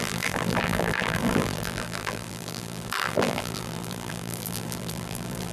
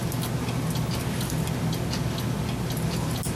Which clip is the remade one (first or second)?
first